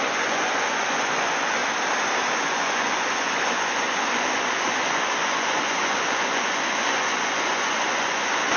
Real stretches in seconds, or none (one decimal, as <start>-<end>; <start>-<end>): 1.6-2.3